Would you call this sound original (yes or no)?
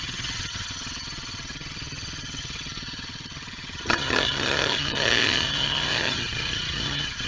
no